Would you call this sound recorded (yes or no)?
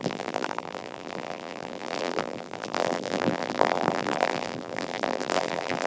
no